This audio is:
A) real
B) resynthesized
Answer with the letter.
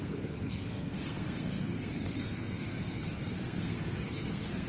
B